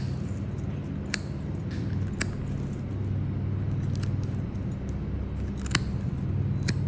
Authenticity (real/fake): real